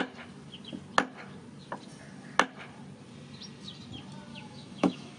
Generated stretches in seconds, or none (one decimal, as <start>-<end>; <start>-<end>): 4.3-5.2